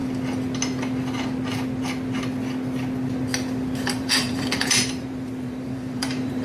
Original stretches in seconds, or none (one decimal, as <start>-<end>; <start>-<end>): 0.0-3.8